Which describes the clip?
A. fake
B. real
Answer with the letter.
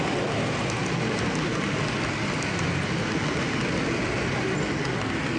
B